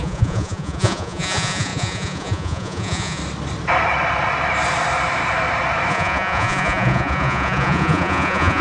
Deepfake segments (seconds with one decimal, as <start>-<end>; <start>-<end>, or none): 0.0-3.2; 5.9-8.6